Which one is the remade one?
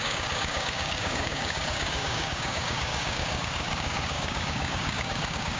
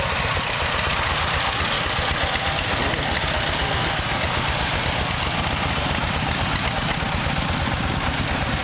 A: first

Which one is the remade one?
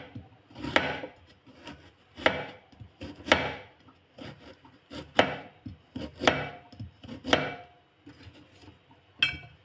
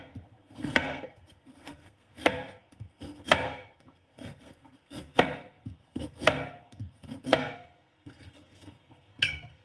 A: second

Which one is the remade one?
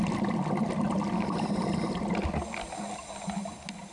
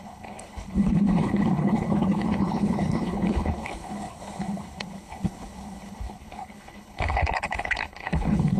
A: second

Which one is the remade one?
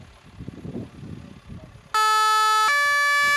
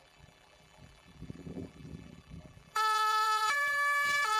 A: second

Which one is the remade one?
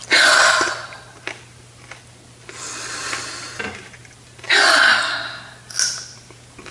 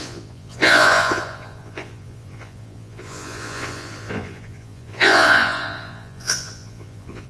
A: second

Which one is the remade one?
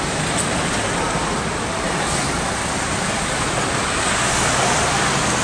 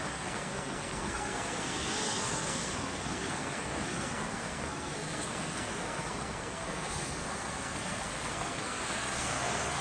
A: second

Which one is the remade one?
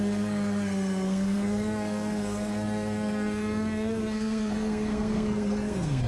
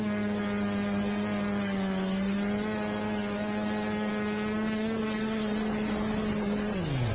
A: first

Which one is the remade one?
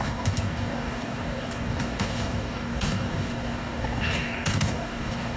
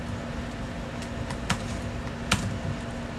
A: first